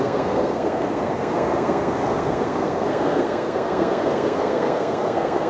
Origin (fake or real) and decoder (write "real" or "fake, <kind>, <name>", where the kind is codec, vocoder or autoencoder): fake, codec, SNAC